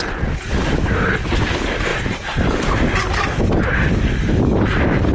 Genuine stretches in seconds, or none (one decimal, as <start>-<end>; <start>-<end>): 0.0-5.1